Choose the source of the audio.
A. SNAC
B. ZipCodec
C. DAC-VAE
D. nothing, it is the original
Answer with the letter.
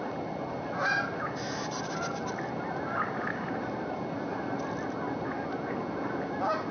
D